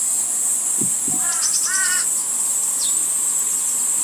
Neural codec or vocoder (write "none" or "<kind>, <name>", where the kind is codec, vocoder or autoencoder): vocoder, BigVGAN v2